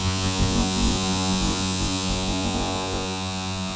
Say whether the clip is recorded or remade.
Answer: remade